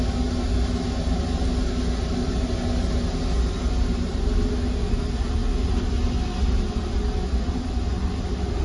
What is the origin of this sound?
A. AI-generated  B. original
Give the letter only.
B